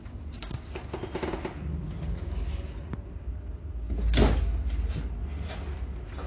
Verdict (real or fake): real